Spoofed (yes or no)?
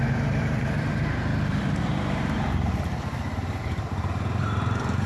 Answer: yes